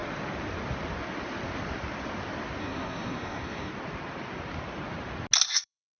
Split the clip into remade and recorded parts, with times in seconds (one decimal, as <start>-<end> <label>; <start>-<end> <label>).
0.0-2.6 recorded; 2.6-3.7 remade; 3.7-5.5 recorded; 5.5-6.0 remade